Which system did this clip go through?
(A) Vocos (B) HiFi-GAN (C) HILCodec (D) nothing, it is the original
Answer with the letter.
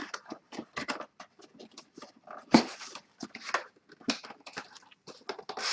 D